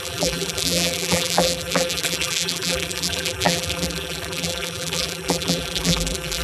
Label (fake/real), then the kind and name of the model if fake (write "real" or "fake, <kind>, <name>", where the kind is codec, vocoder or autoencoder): fake, vocoder, BigVGAN v2